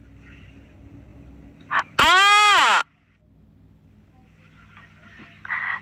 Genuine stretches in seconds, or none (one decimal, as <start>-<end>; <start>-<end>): 0.0-5.8